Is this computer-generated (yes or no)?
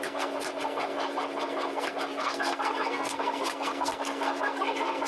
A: yes